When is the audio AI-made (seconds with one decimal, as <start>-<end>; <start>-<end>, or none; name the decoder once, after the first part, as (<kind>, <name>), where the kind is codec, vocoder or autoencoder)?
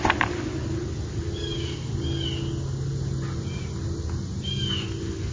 none